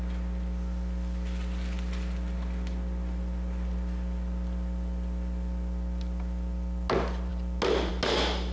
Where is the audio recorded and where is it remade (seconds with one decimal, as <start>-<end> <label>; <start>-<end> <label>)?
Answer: 0.0-8.5 recorded